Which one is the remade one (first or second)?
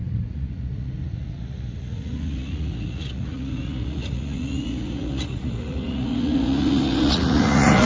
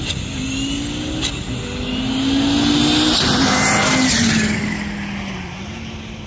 first